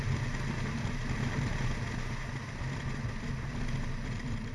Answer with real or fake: real